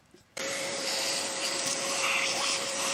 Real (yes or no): no